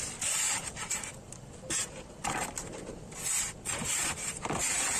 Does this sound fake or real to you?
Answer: fake